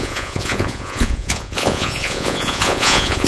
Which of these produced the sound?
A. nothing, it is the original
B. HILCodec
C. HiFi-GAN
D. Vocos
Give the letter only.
D